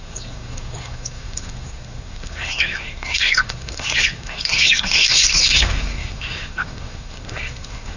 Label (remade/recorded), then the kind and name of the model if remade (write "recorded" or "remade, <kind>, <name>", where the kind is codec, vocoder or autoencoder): remade, codec, SNAC